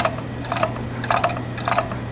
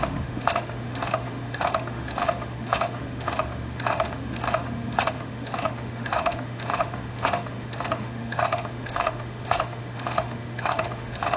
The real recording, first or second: first